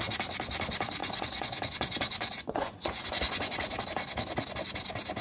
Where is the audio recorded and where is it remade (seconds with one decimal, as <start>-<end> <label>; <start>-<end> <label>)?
0.0-1.0 recorded; 1.0-3.8 remade; 3.8-5.2 recorded